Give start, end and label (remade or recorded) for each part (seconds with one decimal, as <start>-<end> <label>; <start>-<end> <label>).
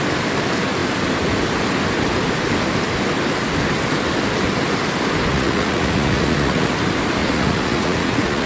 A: 0.0-5.3 recorded; 5.3-6.7 remade; 6.7-7.2 recorded; 7.2-8.5 remade